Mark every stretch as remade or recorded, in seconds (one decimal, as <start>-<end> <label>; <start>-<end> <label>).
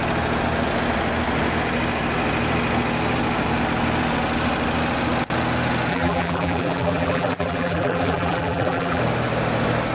0.0-5.9 recorded; 5.9-9.0 remade; 9.0-9.9 recorded